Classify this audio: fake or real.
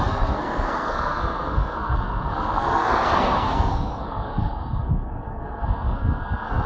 fake